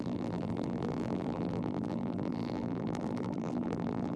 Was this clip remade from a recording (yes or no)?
yes